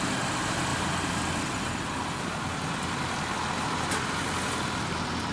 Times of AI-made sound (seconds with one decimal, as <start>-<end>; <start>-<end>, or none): none